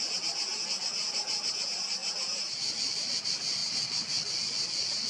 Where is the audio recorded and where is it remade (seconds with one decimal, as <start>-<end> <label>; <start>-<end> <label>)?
0.0-5.1 recorded